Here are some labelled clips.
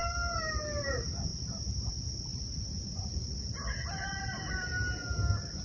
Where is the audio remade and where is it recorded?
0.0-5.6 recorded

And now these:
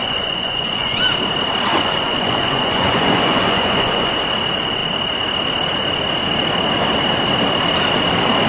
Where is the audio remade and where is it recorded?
0.0-1.0 remade; 1.0-1.7 recorded; 1.7-4.1 remade; 4.1-8.5 recorded

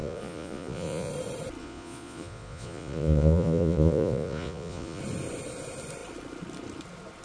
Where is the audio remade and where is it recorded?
0.0-1.1 remade; 1.1-1.6 recorded; 1.6-5.0 remade; 5.0-7.2 recorded

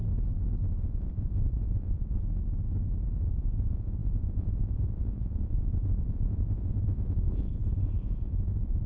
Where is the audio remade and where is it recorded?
0.0-0.8 recorded; 0.8-2.2 remade; 2.2-3.1 recorded; 3.1-8.9 remade

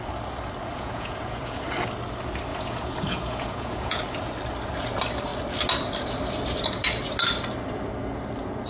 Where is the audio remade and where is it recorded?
0.0-0.7 recorded; 0.7-1.6 remade; 1.6-2.5 recorded; 2.5-4.0 remade; 4.0-8.7 recorded